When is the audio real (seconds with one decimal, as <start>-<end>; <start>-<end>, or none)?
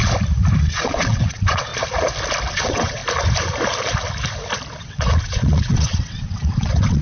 0.0-0.6; 1.7-2.5; 3.0-4.8